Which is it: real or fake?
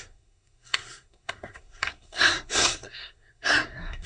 fake